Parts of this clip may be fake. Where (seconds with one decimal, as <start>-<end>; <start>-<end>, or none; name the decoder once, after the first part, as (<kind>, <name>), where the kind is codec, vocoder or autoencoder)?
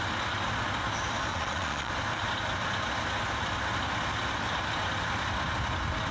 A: 1.3-1.9 (vocoder, Vocos)